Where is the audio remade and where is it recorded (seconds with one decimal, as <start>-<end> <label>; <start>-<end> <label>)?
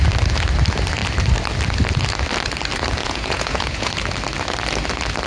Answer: 0.0-3.0 recorded; 3.0-3.9 remade; 3.9-5.3 recorded